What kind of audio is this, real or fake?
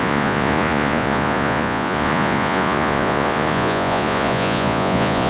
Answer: fake